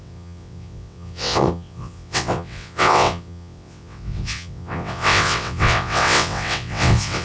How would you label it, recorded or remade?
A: remade